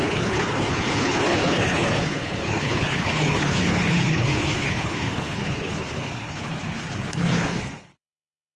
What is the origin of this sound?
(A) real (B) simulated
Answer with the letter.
B